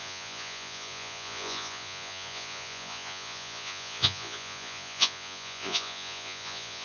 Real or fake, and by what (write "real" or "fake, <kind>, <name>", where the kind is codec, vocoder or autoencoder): fake, vocoder, Vocos